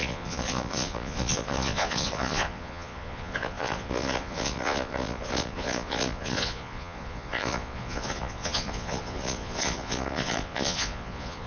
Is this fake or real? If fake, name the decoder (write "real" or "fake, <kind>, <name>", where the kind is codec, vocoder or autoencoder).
fake, vocoder, Vocos